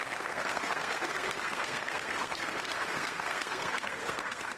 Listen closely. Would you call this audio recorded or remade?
remade